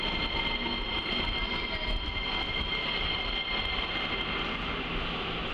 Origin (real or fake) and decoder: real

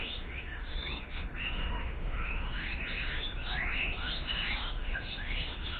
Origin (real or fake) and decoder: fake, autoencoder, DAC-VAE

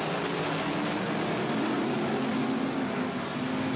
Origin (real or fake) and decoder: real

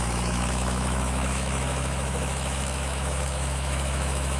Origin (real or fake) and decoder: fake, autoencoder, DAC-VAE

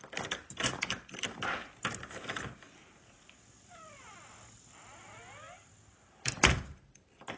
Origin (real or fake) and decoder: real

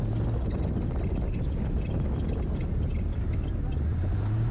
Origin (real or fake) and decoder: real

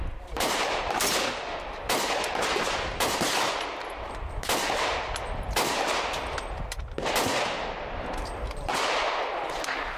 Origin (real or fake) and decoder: real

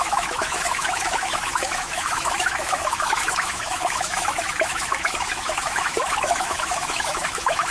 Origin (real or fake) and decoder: fake, autoencoder, DAC-VAE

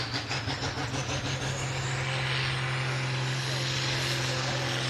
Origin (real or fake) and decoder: real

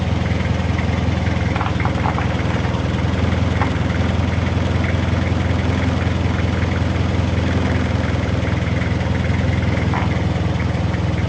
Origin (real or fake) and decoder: real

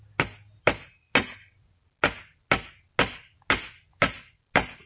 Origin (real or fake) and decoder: real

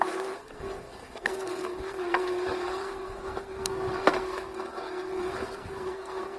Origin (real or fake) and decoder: fake, codec, SNAC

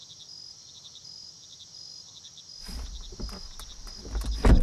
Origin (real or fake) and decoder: real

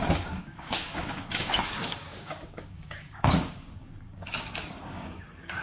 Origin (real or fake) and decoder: fake, codec, DAC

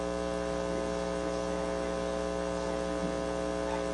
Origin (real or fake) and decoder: real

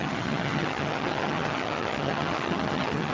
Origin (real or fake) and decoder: fake, vocoder, HiFi-GAN